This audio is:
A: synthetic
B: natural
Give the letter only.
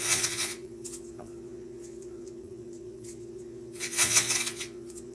A